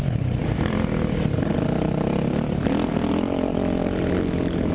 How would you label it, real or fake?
real